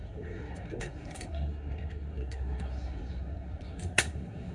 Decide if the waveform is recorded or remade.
remade